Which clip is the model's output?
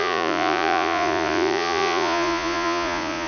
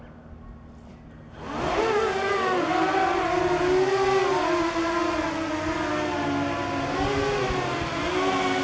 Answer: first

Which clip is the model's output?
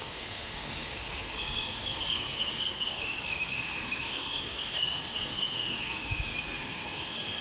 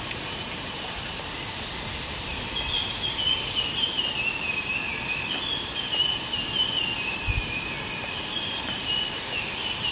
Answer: first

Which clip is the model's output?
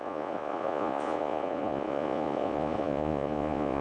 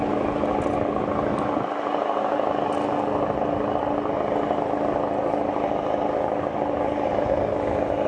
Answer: first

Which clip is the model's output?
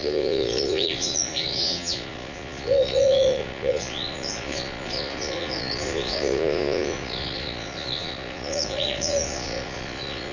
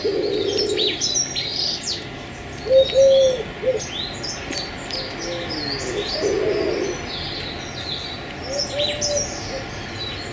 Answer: first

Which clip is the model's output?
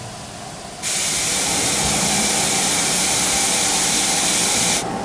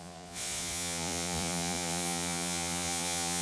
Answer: second